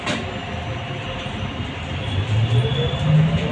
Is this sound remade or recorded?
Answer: recorded